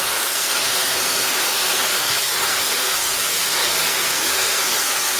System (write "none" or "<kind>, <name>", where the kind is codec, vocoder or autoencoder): codec, SNAC